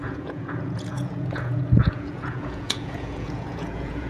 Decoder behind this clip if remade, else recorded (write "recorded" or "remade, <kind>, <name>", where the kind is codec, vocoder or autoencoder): remade, vocoder, Vocos